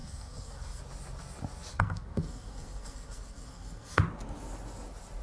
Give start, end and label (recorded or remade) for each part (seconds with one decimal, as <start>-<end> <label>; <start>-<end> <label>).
0.0-0.8 remade; 0.8-1.7 recorded; 1.7-4.0 remade; 4.0-5.2 recorded